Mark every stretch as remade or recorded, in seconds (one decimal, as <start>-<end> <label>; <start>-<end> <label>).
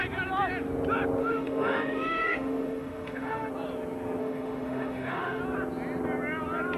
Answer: 0.0-1.2 recorded; 1.2-3.5 remade; 3.5-4.2 recorded; 4.2-5.4 remade; 5.4-6.8 recorded